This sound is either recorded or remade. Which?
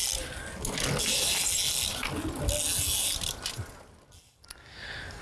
recorded